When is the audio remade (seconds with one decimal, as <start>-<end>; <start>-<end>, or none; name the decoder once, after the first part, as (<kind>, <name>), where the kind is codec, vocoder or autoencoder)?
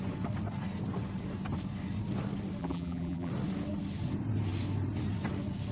2.6-3.3 (vocoder, BigVGAN v2)